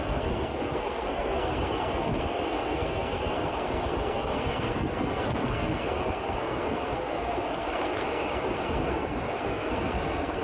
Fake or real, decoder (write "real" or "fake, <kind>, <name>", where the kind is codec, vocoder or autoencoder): fake, codec, SNAC